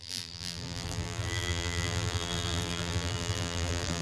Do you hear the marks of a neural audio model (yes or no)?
yes